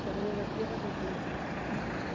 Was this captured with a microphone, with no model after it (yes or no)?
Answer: yes